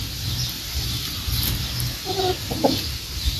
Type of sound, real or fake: real